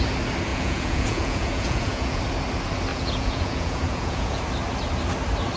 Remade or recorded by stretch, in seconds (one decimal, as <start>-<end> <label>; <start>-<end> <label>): 0.0-0.5 recorded; 0.5-2.2 remade; 2.2-2.9 recorded; 2.9-4.4 remade; 4.4-5.6 recorded